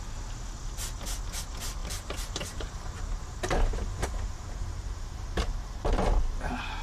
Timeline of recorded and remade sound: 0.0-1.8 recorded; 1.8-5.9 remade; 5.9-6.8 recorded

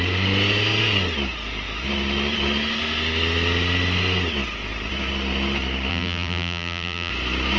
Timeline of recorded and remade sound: 0.0-5.9 recorded; 5.9-7.1 remade; 7.1-7.6 recorded